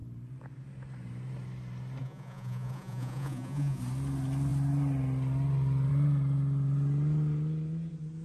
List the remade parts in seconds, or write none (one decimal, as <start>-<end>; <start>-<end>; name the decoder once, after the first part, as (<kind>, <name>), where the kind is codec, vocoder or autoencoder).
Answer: 2.0-3.8 (vocoder, Vocos)